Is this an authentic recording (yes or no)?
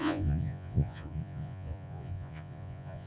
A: no